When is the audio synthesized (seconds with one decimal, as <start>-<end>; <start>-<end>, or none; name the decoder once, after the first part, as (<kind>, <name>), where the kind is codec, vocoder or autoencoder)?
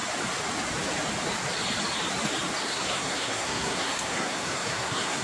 2.6-5.2 (codec, SNAC)